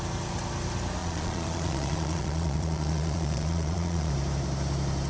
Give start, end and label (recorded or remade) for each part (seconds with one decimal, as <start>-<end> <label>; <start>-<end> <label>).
0.0-1.0 recorded; 1.0-4.1 remade; 4.1-5.1 recorded